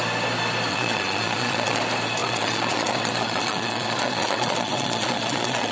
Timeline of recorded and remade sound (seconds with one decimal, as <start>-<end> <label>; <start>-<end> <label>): 0.0-0.7 recorded; 0.7-1.8 remade; 1.8-2.2 recorded; 2.2-5.7 remade